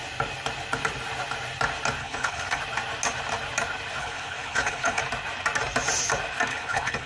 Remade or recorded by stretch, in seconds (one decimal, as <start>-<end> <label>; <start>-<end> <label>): 0.0-2.0 recorded; 2.0-2.6 remade; 2.6-4.0 recorded; 4.0-5.0 remade; 5.0-6.5 recorded; 6.5-7.1 remade